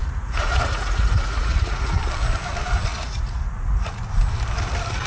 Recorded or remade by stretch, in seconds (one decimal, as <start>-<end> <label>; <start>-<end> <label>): 0.0-2.0 remade; 2.0-2.9 recorded; 2.9-4.0 remade; 4.0-5.1 recorded